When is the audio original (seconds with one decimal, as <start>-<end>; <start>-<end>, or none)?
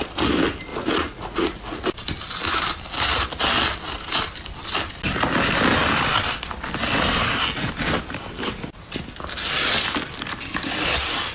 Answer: 0.0-0.7; 1.8-11.3